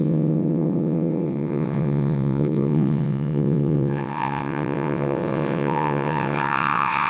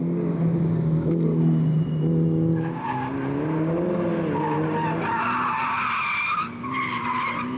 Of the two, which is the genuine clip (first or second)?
second